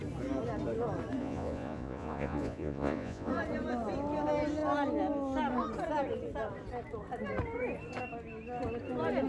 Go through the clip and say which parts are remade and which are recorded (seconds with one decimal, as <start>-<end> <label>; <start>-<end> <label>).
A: 0.0-1.2 recorded; 1.2-3.3 remade; 3.3-9.3 recorded